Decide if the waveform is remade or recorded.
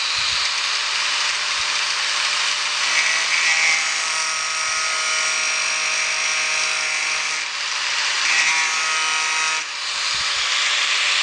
recorded